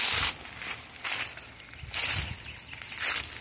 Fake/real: real